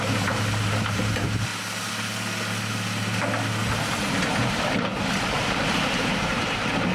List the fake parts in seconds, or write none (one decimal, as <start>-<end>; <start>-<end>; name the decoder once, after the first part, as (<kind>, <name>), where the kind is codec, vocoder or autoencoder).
0.0-1.5 (vocoder, BigVGAN v2); 4.5-6.9